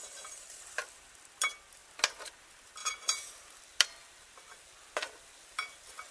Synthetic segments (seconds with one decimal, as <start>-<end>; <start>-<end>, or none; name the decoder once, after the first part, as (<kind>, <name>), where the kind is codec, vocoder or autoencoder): 0.0-0.8 (vocoder, BigVGAN v2); 2.8-3.4